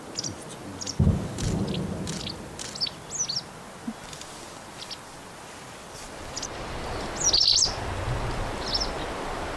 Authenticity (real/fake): real